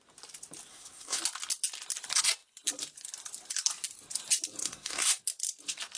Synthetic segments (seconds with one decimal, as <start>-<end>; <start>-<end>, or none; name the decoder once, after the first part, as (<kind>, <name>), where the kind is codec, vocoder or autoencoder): 0.7-1.2 (codec, SNAC); 4.6-5.2